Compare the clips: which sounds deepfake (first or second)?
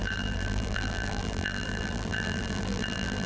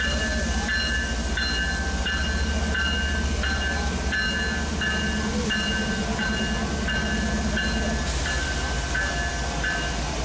first